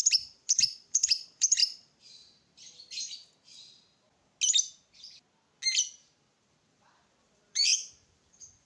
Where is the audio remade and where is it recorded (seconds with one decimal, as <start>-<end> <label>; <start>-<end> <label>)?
0.0-3.2 remade; 3.2-6.4 recorded; 6.4-8.7 remade